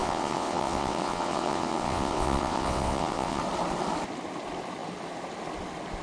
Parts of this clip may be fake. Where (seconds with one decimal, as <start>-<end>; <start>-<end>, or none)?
0.0-3.4